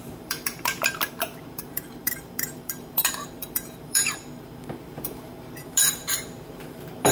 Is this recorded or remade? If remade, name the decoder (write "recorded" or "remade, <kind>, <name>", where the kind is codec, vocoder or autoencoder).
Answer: remade, vocoder, BigVGAN v2